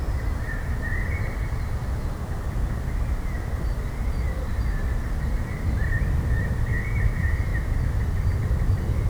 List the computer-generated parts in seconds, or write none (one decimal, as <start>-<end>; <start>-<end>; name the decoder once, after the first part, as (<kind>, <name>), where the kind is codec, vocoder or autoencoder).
0.0-1.8 (vocoder, BigVGAN v2); 6.4-7.5; 8.4-9.1